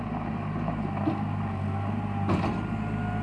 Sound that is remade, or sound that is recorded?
recorded